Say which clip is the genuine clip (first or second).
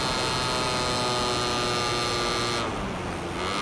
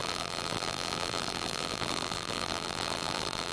first